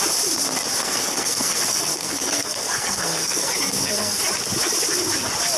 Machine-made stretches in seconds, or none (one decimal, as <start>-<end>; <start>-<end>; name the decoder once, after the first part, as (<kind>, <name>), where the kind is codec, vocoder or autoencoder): 0.8-4.2 (codec, SNAC)